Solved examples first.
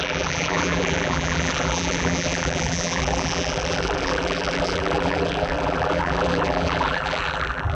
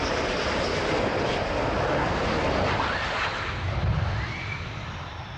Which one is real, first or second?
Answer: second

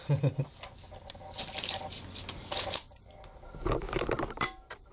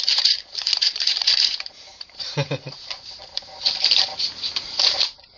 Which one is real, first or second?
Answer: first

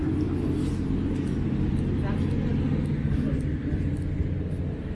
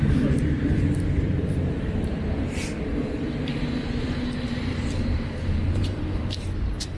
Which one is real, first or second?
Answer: first